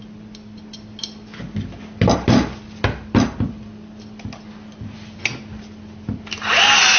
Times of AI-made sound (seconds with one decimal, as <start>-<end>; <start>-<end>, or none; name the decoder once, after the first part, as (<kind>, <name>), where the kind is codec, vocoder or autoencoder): none